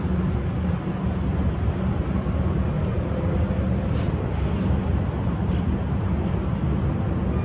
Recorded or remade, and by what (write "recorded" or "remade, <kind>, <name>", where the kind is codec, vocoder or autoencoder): recorded